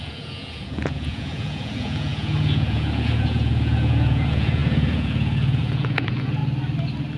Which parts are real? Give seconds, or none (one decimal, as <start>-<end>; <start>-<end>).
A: 6.4-7.2